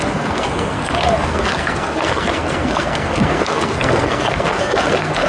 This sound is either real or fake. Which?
fake